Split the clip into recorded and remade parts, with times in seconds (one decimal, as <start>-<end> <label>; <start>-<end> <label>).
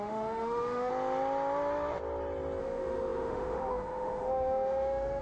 0.0-0.9 remade; 0.9-2.6 recorded; 2.6-5.2 remade